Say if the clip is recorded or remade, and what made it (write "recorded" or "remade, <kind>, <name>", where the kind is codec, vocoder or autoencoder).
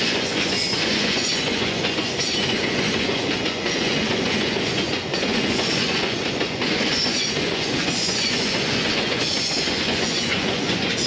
remade, vocoder, Vocos